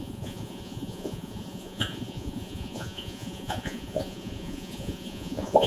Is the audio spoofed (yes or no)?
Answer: yes